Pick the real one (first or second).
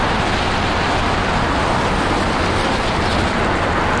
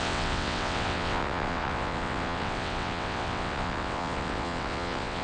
first